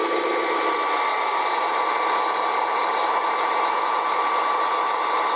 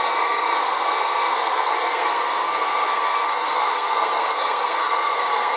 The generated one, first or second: second